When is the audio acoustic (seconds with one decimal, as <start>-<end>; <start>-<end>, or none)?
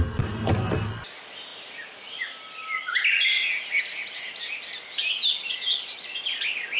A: 0.0-6.8